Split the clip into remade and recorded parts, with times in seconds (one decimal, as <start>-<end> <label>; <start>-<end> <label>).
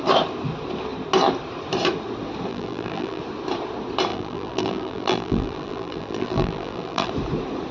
0.0-2.5 recorded; 2.5-3.2 remade; 3.2-4.1 recorded; 4.1-7.1 remade; 7.1-7.7 recorded